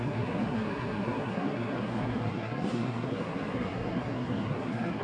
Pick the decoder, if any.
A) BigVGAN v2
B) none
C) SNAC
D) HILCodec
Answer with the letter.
C